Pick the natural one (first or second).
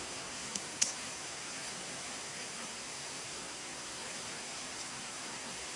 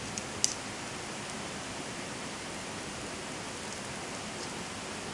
second